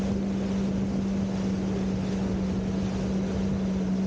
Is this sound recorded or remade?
recorded